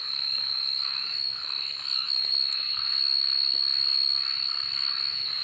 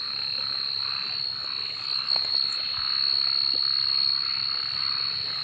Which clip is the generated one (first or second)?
first